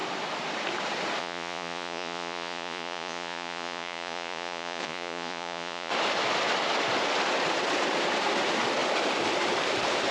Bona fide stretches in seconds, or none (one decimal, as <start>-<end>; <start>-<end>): 0.0-1.2; 5.9-10.1